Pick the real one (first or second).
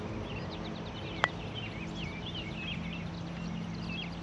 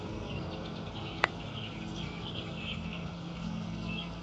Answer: first